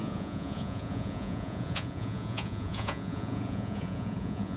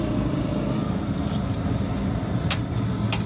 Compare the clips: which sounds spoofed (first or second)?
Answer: first